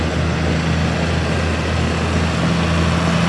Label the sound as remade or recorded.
recorded